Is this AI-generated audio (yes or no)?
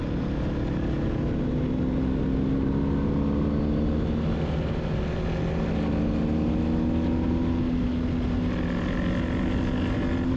no